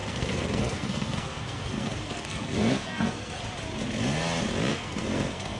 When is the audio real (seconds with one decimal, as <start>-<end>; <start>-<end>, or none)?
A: 3.4-4.7